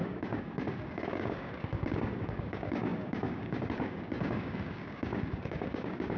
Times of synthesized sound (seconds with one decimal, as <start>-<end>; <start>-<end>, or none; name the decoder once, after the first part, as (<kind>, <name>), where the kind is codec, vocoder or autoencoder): 0.0-6.2 (codec, DAC)